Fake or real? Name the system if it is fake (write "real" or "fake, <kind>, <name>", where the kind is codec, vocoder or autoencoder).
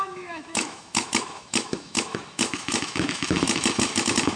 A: fake, autoencoder, DAC-VAE